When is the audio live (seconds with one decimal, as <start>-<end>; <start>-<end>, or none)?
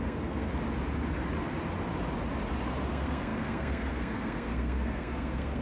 0.5-2.9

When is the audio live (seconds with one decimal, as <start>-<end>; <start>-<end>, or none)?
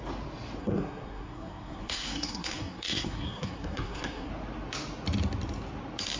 0.0-0.6; 4.3-6.2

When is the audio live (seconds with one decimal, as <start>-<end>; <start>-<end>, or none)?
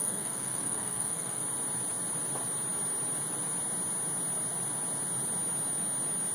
1.4-6.3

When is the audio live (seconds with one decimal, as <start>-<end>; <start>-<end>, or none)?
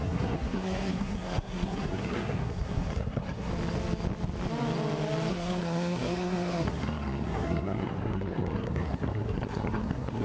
3.5-5.3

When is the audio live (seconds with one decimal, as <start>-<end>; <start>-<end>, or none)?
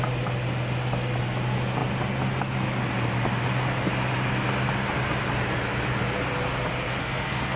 0.0-7.0